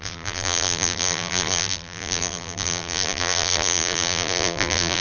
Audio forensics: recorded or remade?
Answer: remade